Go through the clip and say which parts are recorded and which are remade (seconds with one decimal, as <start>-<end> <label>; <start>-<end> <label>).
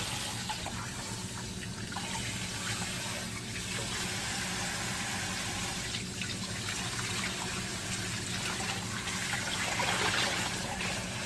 0.0-11.3 recorded